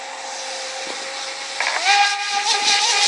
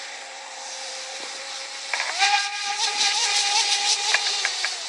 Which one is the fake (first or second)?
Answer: second